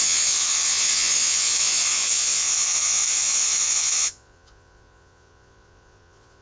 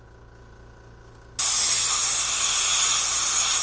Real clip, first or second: second